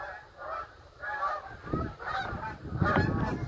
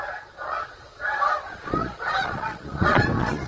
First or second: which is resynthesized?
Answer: second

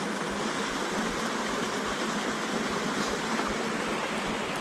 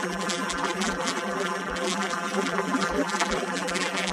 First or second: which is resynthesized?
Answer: second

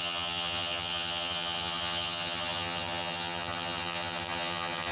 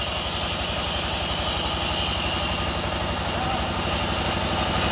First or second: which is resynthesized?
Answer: first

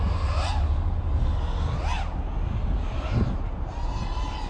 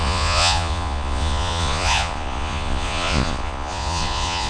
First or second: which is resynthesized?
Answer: second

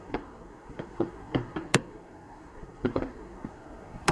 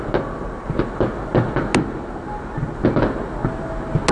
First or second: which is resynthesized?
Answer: first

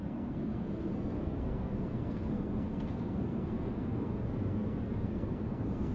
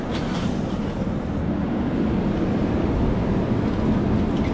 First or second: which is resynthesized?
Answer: first